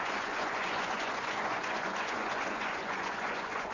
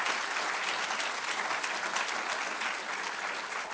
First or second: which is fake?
first